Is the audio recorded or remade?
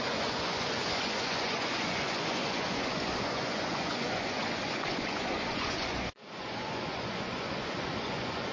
remade